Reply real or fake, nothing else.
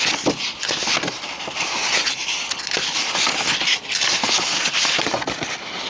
real